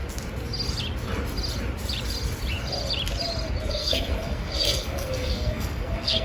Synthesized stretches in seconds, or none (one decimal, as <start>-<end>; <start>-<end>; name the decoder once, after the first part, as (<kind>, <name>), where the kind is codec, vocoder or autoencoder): 3.7-6.2 (codec, SNAC)